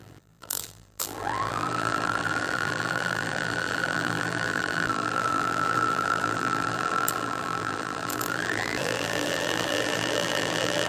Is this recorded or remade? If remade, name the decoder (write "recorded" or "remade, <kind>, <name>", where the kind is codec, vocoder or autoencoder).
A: remade, vocoder, BigVGAN v2